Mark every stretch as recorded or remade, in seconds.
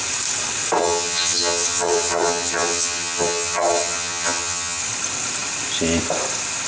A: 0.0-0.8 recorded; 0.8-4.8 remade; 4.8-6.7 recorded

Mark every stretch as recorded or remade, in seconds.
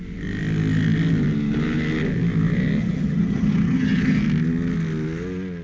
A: 0.0-2.8 recorded; 2.8-4.2 remade; 4.2-5.6 recorded